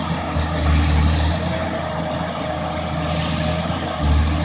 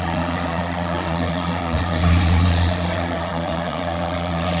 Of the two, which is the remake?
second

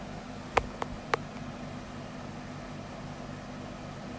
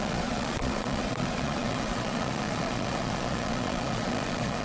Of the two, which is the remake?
second